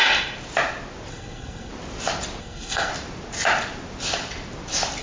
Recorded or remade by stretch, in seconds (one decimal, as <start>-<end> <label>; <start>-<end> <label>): 0.0-1.1 recorded; 1.1-1.7 remade; 1.7-2.4 recorded; 2.4-2.9 remade; 2.9-5.0 recorded